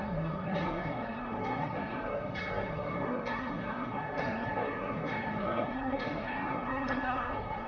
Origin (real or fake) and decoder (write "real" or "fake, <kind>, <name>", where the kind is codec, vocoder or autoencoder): fake, codec, SNAC